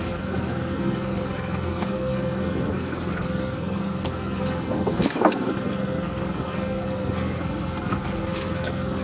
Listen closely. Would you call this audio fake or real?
fake